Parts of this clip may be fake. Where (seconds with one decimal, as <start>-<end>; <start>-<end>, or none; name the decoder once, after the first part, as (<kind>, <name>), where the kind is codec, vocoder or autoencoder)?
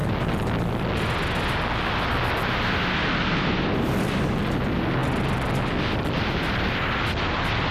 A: none